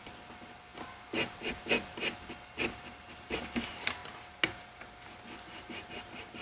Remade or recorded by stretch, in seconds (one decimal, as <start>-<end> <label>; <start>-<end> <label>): 0.0-6.4 recorded